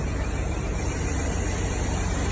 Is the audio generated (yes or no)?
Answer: yes